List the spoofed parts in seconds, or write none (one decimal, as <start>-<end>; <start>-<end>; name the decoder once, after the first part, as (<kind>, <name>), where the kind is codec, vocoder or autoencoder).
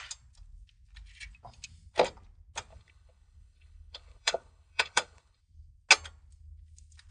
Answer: 2.7-5.4 (codec, HILCodec)